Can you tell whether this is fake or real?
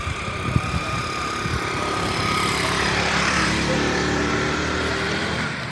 fake